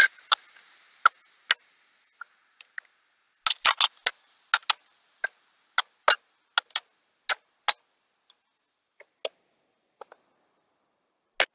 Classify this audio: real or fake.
real